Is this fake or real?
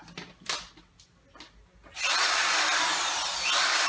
real